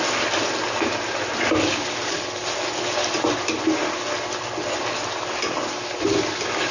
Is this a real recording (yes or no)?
yes